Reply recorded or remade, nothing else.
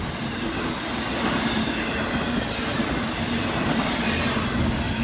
recorded